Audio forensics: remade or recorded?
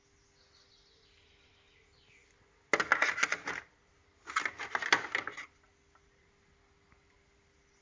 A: recorded